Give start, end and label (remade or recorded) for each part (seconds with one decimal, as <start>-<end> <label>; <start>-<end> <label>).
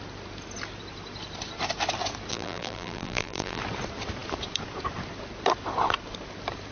0.0-2.3 recorded; 2.3-3.6 remade; 3.6-6.7 recorded